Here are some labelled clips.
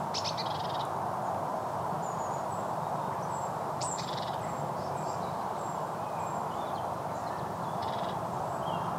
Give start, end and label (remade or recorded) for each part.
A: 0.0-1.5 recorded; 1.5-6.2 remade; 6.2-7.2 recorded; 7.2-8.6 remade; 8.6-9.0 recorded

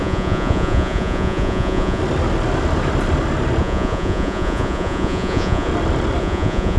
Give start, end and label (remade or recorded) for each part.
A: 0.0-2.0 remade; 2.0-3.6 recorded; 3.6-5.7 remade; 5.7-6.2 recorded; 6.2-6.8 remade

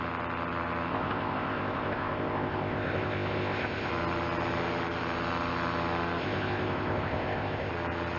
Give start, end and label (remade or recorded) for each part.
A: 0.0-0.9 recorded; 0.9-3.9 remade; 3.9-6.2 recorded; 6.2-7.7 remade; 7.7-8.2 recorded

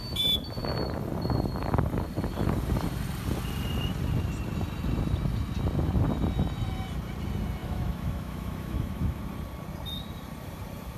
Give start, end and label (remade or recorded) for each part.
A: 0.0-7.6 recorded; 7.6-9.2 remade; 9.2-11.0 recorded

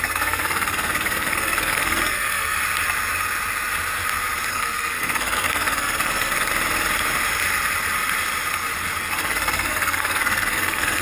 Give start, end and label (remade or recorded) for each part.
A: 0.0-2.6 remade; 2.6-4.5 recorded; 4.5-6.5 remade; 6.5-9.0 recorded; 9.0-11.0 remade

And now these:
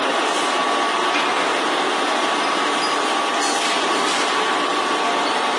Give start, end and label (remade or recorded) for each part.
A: 0.0-5.6 recorded

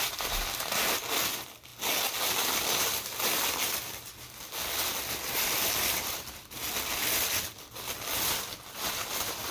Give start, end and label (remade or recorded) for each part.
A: 0.0-9.5 recorded